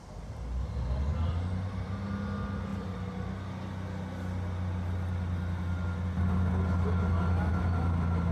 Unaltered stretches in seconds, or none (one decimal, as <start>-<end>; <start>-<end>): 0.0-8.3